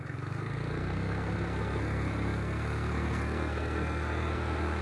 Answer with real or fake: fake